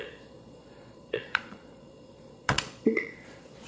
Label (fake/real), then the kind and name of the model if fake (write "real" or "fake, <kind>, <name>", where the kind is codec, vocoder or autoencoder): fake, vocoder, Vocos